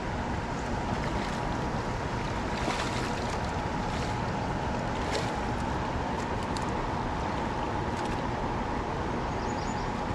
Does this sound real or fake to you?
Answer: real